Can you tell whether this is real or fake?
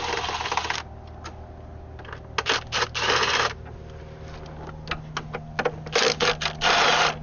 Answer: real